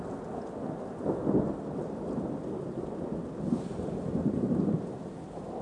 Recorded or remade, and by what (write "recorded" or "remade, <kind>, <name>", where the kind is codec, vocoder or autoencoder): recorded